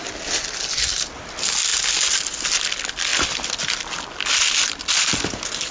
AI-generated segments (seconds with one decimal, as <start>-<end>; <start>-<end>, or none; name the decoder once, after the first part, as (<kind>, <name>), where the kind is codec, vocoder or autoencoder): none